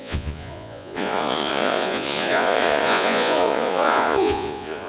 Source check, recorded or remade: remade